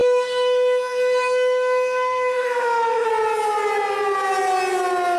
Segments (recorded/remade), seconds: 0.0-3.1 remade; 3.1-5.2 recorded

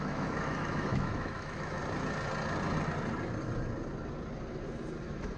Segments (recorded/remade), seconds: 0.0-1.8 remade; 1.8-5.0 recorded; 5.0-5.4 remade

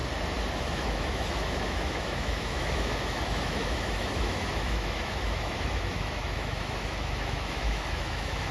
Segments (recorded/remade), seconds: 0.0-0.6 recorded; 0.6-8.5 remade

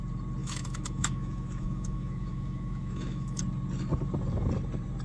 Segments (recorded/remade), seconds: 0.0-0.4 recorded; 0.4-3.4 remade; 3.4-5.0 recorded

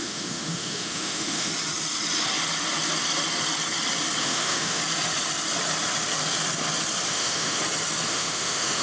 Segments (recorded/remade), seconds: 0.0-1.5 remade; 1.5-4.2 recorded; 4.2-4.8 remade; 4.8-7.1 recorded; 7.1-7.6 remade; 7.6-8.1 recorded; 8.1-8.8 remade

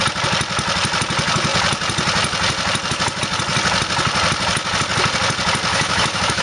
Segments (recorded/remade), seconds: 0.0-5.7 recorded; 5.7-6.4 remade

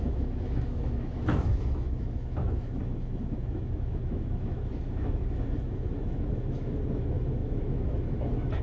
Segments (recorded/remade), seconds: 0.0-8.6 remade